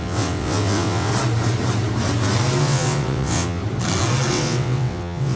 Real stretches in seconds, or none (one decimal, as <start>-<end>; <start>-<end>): 1.1-2.6; 3.6-4.3